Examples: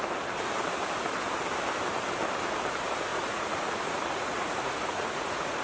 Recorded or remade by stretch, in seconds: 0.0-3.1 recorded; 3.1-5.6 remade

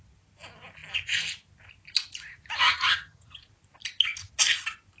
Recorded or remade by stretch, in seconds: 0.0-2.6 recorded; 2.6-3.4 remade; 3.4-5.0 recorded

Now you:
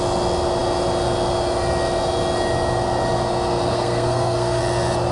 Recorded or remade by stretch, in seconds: 0.0-3.7 recorded; 3.7-4.6 remade; 4.6-5.1 recorded

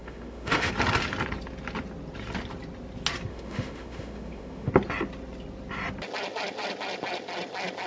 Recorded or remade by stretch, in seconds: 0.0-0.7 remade; 0.7-3.3 recorded; 3.3-4.7 remade; 4.7-7.9 recorded

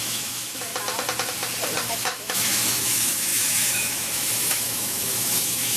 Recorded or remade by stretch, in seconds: 0.0-0.7 remade; 0.7-1.9 recorded; 1.9-5.8 remade

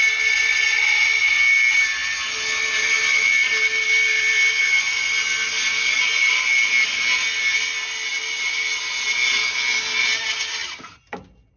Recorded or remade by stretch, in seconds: 0.0-11.6 recorded

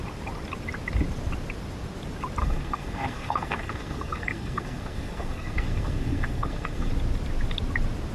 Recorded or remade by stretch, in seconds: 0.0-2.4 recorded; 2.4-6.9 remade; 6.9-8.1 recorded

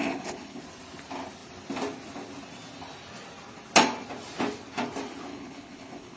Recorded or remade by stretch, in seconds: 0.0-0.6 remade; 0.6-5.3 recorded; 5.3-6.2 remade